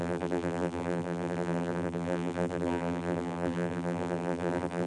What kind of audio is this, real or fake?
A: fake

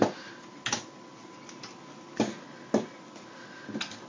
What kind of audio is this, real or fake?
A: real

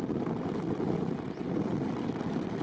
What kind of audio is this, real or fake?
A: real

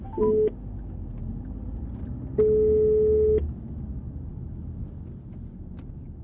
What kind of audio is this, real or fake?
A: real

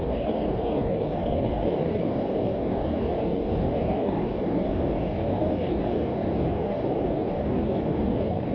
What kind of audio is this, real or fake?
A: fake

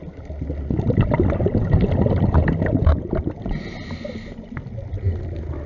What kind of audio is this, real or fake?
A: real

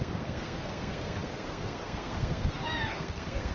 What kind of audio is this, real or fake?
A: fake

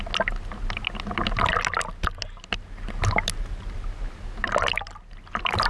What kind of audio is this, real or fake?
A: real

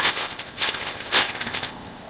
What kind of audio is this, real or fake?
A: fake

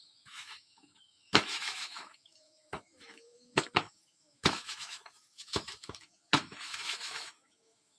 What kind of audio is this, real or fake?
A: fake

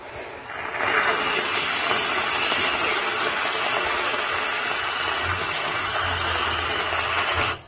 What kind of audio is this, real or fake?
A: real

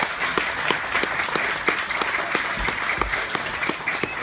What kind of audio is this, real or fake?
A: real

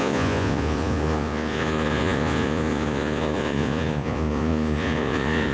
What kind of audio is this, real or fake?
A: fake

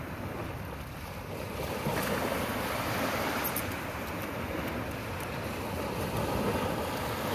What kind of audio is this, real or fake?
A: real